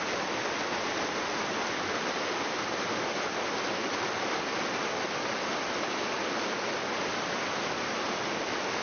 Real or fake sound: real